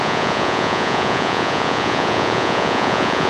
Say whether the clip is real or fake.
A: fake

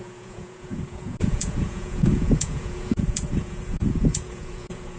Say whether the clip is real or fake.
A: fake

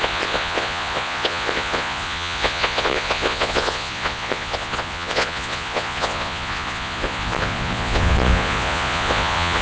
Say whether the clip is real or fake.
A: fake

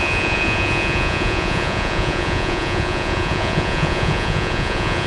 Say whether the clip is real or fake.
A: fake